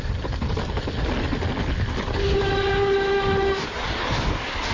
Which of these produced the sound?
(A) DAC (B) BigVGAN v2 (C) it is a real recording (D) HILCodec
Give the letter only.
C